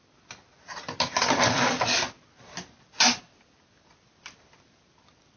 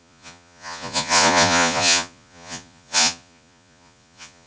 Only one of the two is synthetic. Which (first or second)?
second